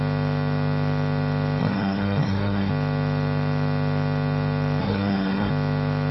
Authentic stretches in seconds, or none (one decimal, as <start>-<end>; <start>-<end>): 0.0-1.6; 2.7-4.8; 5.5-6.1